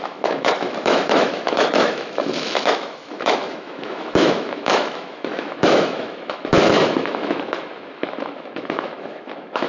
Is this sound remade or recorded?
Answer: remade